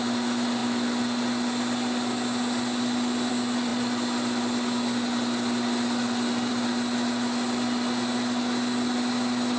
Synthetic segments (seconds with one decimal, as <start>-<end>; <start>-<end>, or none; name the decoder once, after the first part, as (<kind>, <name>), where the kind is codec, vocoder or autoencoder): none